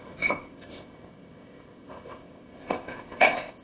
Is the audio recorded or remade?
remade